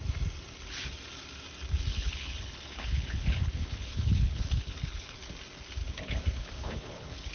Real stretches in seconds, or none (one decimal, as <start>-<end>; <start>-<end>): 0.0-1.9; 5.3-5.8